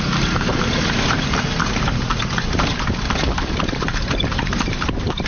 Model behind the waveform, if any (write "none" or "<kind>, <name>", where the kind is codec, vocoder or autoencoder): vocoder, BigVGAN v2